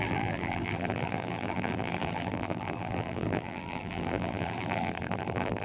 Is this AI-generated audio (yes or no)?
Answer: yes